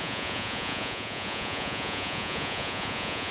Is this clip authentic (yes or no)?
no